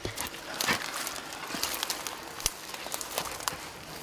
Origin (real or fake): real